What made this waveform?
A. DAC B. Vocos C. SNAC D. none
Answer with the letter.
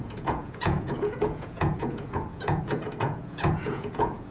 B